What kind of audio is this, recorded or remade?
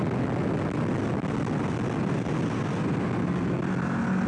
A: recorded